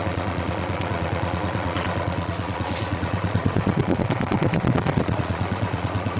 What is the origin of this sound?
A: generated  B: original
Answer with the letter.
A